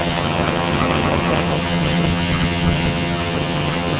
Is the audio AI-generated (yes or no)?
yes